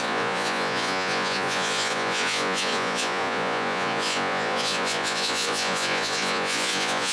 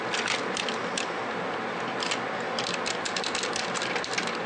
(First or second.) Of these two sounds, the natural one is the second